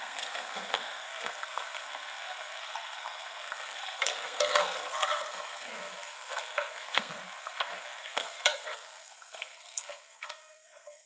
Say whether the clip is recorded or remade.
remade